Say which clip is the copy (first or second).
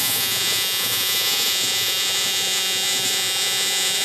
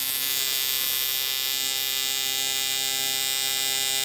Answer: first